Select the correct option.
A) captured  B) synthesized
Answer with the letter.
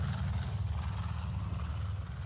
A